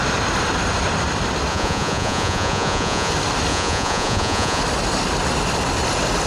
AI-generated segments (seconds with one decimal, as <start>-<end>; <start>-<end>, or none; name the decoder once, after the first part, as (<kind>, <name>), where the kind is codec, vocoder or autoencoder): 1.5-3.1 (vocoder, Vocos); 3.5-4.6